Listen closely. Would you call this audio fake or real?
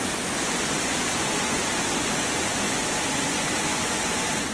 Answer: fake